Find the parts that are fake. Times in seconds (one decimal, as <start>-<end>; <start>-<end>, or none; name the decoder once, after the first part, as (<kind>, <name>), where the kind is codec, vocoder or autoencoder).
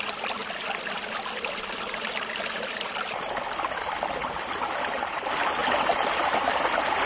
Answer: 0.0-0.4 (vocoder, BigVGAN v2); 1.3-5.6; 6.2-7.1